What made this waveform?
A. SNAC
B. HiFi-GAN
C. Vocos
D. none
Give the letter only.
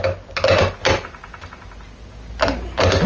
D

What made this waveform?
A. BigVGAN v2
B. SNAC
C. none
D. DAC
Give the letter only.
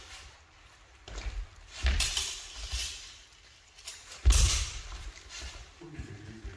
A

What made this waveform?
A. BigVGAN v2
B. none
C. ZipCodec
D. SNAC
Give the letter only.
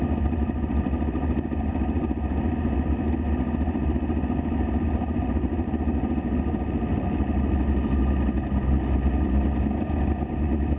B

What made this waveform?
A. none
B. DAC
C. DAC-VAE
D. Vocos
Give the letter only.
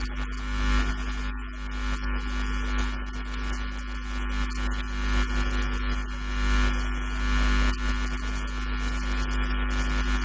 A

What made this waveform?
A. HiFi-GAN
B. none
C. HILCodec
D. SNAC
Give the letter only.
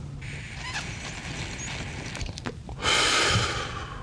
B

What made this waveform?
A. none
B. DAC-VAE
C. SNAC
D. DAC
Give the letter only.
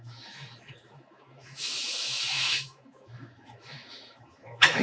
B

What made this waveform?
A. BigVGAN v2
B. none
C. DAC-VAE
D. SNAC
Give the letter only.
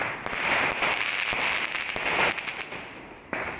B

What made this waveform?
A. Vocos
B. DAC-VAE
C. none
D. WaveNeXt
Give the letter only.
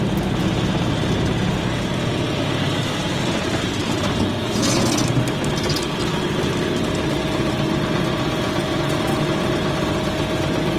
C